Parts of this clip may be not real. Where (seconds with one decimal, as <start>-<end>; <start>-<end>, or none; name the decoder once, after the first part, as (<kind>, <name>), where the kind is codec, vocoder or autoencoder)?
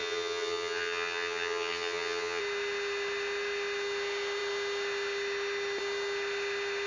0.0-2.4 (vocoder, HiFi-GAN)